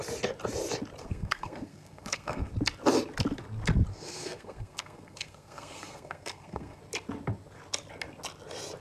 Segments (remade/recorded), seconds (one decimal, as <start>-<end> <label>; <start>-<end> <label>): 0.0-1.0 recorded; 1.0-2.5 remade; 2.5-3.9 recorded; 3.9-6.8 remade; 6.8-8.8 recorded